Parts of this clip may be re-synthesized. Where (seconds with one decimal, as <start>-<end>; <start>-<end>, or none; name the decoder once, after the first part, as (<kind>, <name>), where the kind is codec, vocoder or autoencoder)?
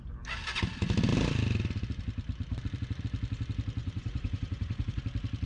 3.8-5.0 (vocoder, Vocos)